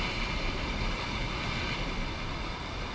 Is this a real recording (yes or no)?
yes